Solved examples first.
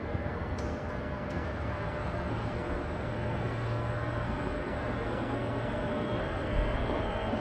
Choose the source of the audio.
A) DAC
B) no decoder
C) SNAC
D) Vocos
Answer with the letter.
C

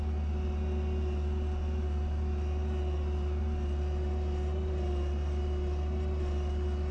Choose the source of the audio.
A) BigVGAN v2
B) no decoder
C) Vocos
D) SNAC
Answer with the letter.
B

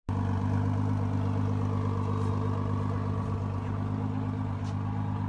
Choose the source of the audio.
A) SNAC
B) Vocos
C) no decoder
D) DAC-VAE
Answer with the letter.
C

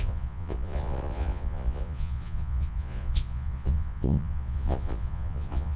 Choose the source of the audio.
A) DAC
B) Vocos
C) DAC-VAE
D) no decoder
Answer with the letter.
B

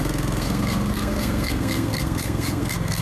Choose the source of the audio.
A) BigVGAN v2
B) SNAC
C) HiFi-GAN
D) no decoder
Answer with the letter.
B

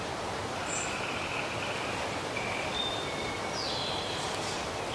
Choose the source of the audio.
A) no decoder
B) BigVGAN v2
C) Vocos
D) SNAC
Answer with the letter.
A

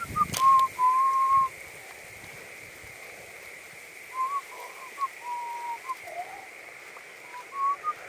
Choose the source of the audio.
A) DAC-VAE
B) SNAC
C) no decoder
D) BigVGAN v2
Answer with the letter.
C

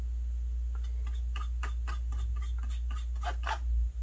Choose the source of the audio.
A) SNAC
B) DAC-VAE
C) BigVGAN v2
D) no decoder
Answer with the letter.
D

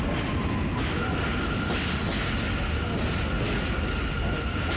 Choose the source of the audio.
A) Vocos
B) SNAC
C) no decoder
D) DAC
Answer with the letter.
C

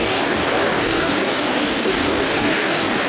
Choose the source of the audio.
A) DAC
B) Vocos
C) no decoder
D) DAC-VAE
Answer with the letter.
A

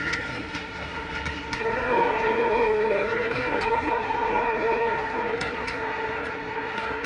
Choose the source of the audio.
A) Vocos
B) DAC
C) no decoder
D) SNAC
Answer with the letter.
D